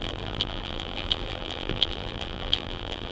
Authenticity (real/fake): fake